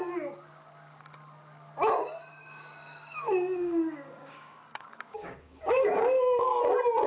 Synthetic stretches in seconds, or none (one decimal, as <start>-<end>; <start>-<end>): 2.3-6.6